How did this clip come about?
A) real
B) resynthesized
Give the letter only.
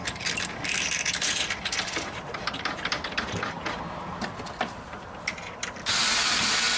B